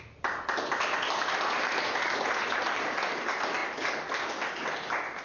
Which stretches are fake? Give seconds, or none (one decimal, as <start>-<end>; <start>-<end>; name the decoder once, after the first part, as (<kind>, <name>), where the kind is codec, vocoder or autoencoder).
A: none